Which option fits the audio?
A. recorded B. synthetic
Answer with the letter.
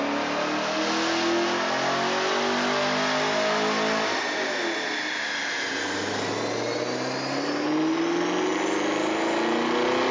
A